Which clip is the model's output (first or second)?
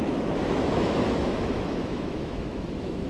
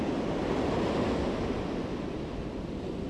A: first